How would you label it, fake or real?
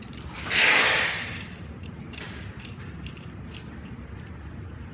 real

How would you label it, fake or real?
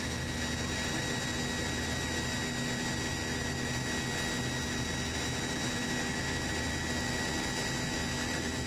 real